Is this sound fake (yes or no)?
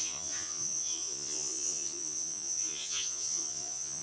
yes